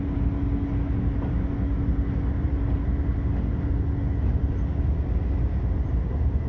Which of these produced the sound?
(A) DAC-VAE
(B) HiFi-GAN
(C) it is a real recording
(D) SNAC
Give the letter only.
C